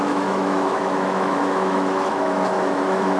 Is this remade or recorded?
remade